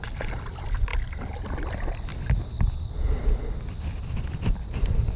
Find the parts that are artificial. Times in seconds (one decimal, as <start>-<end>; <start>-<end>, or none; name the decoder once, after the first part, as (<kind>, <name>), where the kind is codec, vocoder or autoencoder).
none